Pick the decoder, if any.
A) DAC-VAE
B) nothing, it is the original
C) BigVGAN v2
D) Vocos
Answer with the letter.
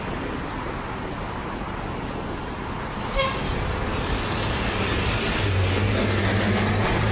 B